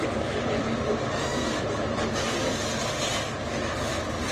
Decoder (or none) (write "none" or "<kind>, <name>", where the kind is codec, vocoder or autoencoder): none